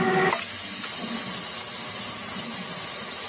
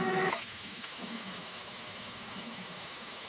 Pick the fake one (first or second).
second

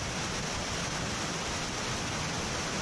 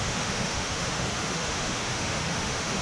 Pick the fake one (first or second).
second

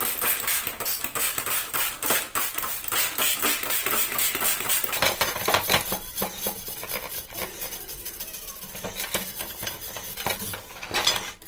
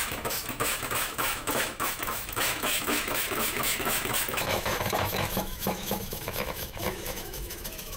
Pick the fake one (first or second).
second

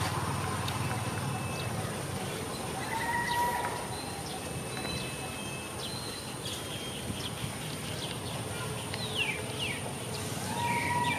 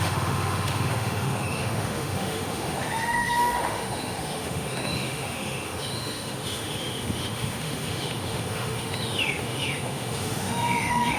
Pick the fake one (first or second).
second